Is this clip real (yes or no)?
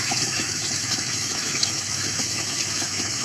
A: no